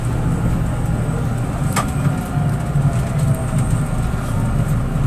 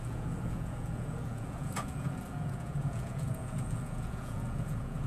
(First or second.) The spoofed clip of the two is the second